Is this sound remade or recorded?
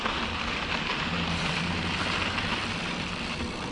remade